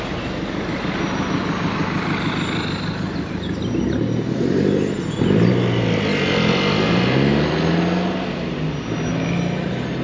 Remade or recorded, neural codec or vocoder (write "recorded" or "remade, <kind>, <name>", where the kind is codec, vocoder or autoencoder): recorded